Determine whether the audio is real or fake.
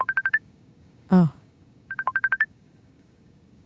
fake